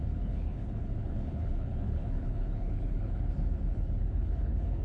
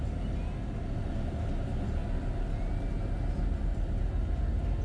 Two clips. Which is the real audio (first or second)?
second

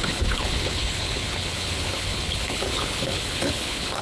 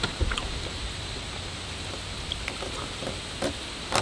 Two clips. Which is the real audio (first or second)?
second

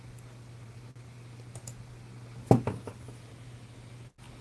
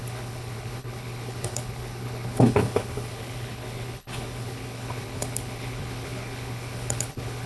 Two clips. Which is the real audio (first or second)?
first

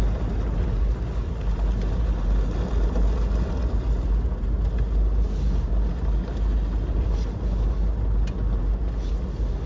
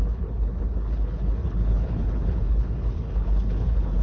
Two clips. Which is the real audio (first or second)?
first